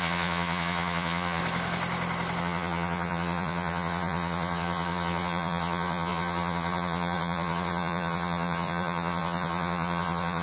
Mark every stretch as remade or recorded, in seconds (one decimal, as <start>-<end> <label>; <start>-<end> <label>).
0.0-1.4 remade; 1.4-2.4 recorded; 2.4-10.4 remade